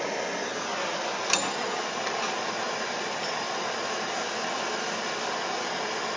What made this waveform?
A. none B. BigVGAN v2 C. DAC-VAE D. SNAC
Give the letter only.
A